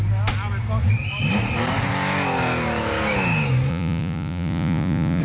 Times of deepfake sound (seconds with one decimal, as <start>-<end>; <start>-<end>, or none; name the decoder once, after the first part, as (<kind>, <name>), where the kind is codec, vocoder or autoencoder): 3.7-5.2 (vocoder, Vocos)